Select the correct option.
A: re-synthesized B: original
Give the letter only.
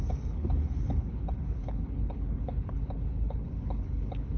A